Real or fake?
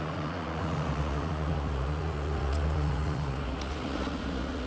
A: fake